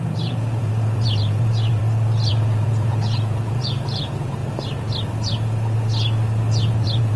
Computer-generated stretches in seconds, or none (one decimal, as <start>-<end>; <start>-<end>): 0.0-1.8; 2.3-4.4; 6.7-7.2